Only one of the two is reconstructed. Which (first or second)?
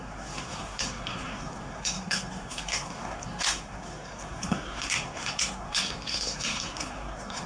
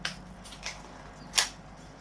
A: first